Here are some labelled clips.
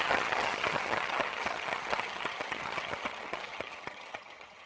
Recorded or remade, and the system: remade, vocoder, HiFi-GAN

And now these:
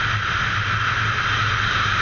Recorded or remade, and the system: recorded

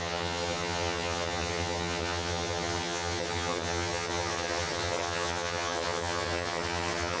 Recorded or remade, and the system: remade, vocoder, HiFi-GAN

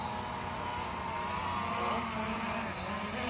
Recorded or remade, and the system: recorded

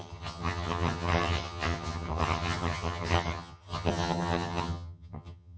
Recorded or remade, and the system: remade, vocoder, HiFi-GAN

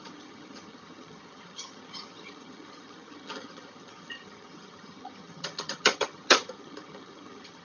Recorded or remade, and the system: remade, vocoder, HiFi-GAN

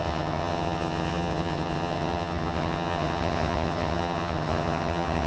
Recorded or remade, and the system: remade, vocoder, HiFi-GAN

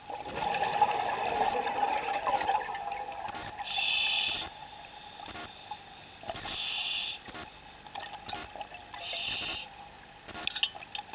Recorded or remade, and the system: recorded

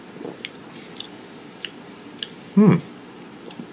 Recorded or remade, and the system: recorded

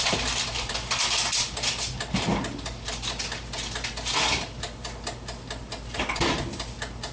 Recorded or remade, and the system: recorded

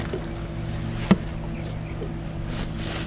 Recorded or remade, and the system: recorded